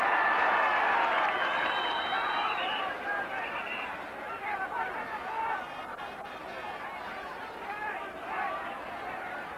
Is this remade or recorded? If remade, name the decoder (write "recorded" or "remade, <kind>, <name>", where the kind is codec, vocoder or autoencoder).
remade, vocoder, BigVGAN v2